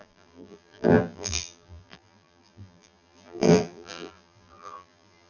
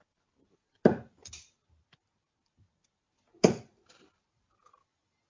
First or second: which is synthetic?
first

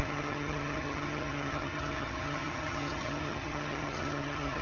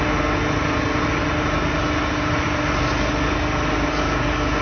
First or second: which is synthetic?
first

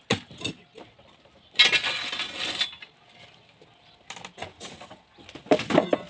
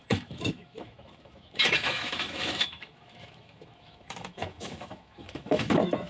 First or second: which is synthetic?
second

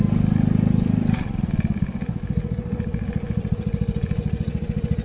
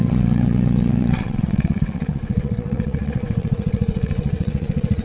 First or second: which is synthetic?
second